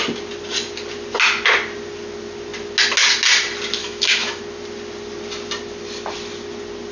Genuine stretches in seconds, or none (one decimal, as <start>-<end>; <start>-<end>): 0.0-3.8; 4.4-6.9